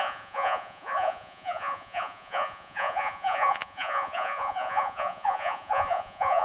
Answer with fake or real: fake